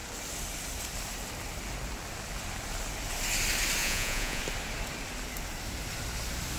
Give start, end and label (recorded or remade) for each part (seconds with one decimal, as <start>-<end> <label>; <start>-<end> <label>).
0.0-3.8 recorded; 3.8-4.4 remade; 4.4-6.6 recorded